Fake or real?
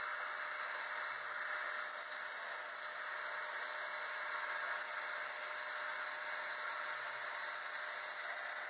real